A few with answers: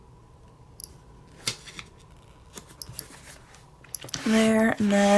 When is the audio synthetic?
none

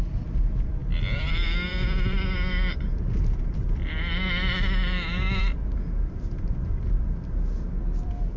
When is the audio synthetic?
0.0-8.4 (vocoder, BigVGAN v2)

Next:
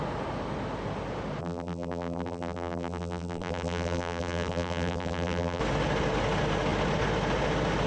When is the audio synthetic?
1.4-5.6 (vocoder, BigVGAN v2)

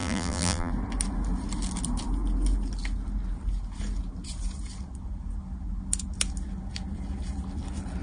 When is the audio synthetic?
0.0-0.7 (vocoder, BigVGAN v2)